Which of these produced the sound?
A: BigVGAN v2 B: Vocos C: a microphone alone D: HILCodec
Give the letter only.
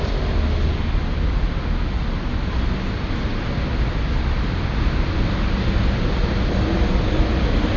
C